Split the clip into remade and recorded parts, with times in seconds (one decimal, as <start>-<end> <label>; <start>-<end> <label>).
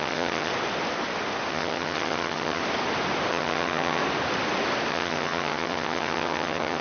0.0-0.5 remade; 0.5-1.5 recorded; 1.5-2.6 remade; 2.6-3.3 recorded; 3.3-4.0 remade; 4.0-4.9 recorded; 4.9-6.8 remade